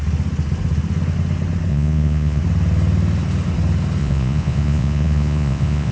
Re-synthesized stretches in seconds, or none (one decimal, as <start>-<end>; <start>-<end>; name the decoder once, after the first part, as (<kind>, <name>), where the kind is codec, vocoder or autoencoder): 1.7-2.4 (vocoder, Vocos); 4.0-5.9